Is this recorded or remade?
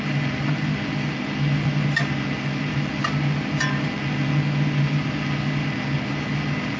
recorded